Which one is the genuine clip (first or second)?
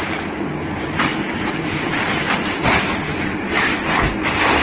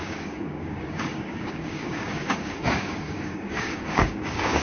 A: first